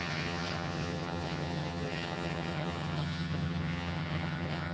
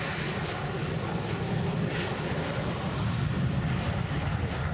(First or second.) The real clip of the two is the second